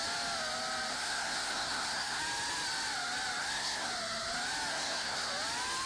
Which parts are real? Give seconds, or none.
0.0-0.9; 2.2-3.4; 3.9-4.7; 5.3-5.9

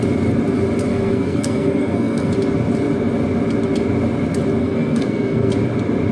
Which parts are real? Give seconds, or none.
0.0-0.9; 2.3-4.6; 5.5-6.1

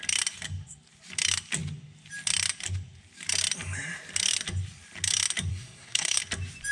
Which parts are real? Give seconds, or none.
0.0-5.5; 6.2-6.7

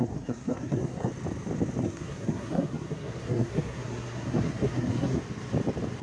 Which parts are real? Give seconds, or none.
1.1-1.8; 5.2-6.0

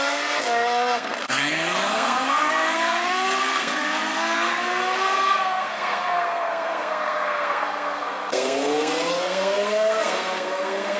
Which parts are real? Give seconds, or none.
none

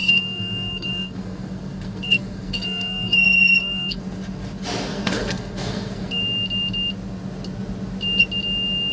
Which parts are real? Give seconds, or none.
4.0-4.9; 6.2-8.9